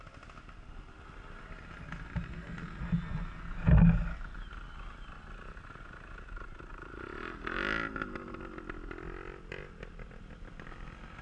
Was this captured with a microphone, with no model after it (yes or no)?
yes